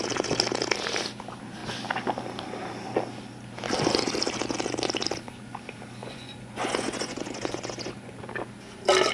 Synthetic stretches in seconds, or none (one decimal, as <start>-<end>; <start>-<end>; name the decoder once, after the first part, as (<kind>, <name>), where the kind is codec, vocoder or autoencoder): 6.0-8.2 (vocoder, Vocos)